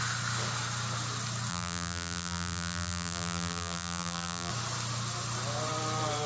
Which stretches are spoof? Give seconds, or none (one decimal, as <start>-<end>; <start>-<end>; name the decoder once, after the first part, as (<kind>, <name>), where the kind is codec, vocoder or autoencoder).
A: 1.5-4.5 (vocoder, BigVGAN v2)